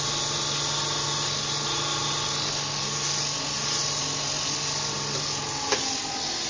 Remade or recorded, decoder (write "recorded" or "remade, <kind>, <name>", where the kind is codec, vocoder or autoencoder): recorded